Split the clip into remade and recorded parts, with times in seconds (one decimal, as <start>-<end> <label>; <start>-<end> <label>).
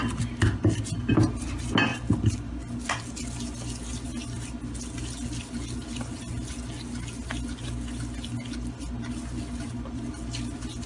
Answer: 0.0-10.9 recorded